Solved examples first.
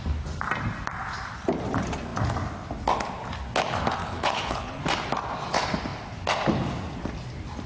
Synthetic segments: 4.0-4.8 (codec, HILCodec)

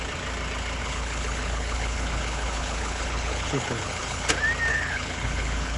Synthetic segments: 0.8-4.3 (codec, HILCodec); 4.7-5.8

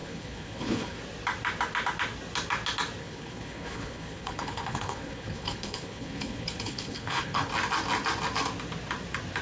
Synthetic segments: 0.0-1.0 (codec, HILCodec); 3.0-7.5